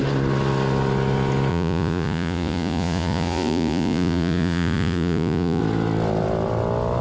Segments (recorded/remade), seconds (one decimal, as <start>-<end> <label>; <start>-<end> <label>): 0.0-1.5 recorded; 1.5-5.6 remade; 5.6-7.0 recorded